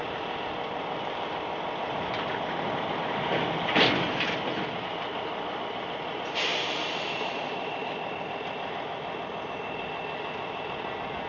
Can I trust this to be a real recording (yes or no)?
yes